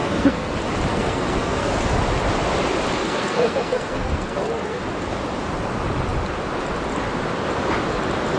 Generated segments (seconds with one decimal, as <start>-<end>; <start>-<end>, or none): 0.0-0.5; 0.9-1.7; 3.0-4.8